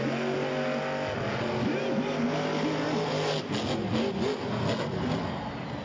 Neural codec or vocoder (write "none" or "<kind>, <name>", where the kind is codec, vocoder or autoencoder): none